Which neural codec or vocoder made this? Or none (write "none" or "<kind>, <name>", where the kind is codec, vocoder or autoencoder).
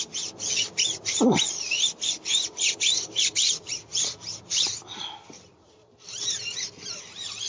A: none